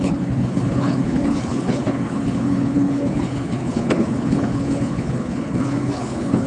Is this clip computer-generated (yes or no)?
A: yes